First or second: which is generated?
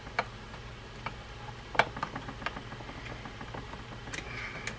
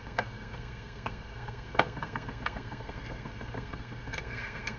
second